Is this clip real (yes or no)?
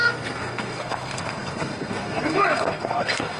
no